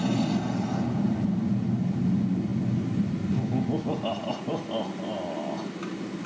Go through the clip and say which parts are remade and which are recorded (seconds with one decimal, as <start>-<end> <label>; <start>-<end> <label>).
0.0-6.3 recorded